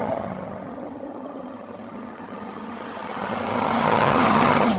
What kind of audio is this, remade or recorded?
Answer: remade